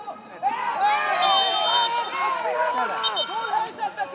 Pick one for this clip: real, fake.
real